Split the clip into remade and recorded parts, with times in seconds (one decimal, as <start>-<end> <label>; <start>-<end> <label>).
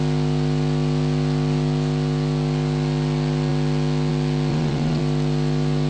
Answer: 0.0-4.5 recorded; 4.5-5.0 remade; 5.0-5.9 recorded